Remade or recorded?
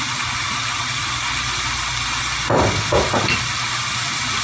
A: recorded